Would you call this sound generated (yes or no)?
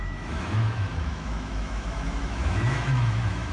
yes